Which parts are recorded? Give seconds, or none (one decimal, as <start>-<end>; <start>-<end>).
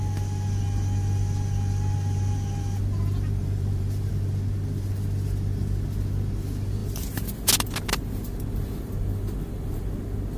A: 0.0-3.4; 4.1-10.4